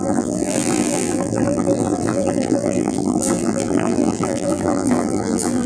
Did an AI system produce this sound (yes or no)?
yes